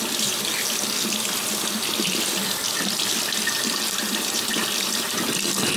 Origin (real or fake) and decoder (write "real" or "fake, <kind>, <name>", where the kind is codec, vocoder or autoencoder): real